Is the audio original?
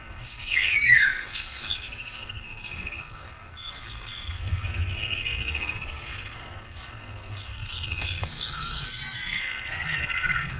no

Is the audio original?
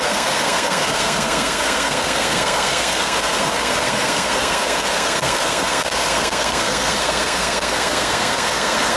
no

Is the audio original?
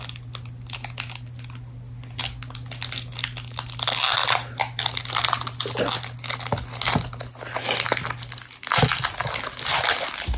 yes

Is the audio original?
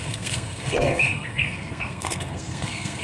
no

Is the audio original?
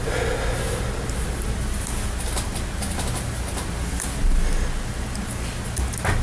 yes